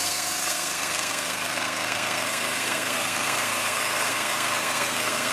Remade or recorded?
remade